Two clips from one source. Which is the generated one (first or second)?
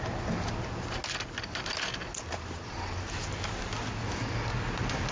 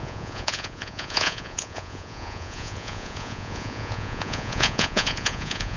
second